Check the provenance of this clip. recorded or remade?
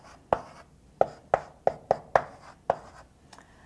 recorded